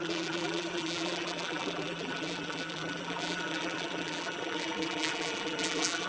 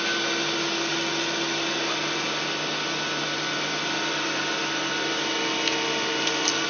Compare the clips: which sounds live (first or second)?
second